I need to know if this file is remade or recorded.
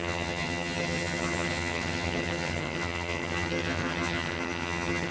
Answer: remade